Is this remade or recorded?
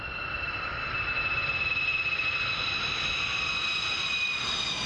recorded